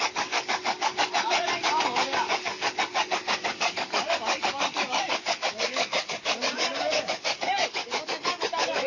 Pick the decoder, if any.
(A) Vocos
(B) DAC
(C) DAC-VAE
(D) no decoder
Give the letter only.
B